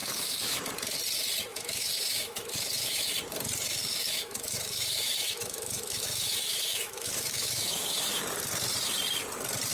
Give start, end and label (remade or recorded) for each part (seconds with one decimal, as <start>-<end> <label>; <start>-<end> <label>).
0.0-0.6 remade; 0.6-1.5 recorded; 1.5-3.1 remade; 3.1-3.8 recorded; 3.8-8.2 remade; 8.2-9.7 recorded